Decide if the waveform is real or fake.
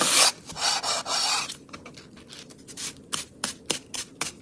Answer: real